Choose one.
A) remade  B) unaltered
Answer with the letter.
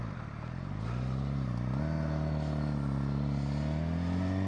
B